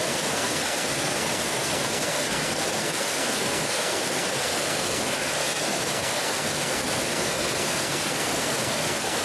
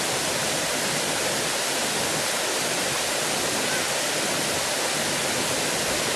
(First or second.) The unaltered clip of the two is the second